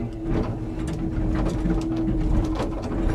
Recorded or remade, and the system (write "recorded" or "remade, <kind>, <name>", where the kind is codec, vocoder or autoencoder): recorded